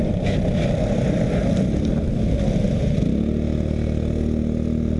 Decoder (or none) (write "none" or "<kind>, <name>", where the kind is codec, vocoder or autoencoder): none